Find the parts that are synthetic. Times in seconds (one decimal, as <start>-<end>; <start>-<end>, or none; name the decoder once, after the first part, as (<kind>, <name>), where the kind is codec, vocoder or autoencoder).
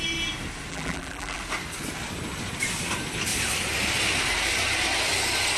0.7-1.4 (vocoder, BigVGAN v2)